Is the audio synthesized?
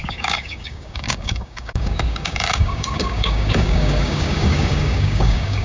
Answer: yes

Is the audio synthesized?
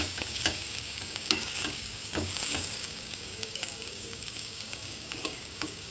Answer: yes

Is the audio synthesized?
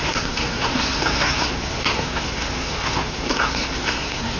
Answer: yes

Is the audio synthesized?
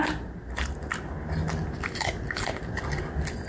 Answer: no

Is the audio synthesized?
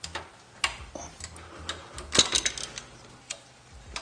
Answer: no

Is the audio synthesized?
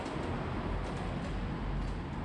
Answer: no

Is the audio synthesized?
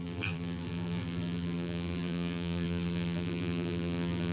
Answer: yes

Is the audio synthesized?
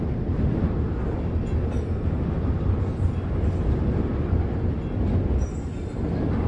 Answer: no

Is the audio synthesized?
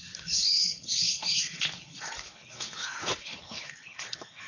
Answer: yes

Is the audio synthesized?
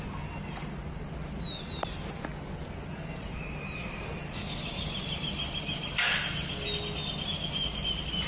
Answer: no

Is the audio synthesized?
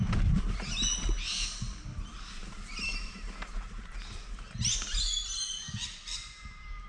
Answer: no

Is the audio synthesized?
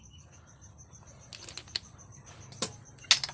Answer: no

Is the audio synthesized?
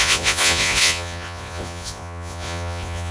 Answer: yes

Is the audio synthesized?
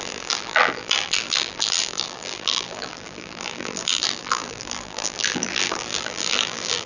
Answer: yes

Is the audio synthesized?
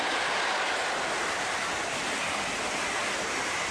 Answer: no